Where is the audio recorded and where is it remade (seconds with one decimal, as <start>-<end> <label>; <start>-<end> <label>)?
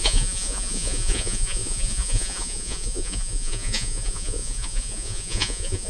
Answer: 0.0-5.9 remade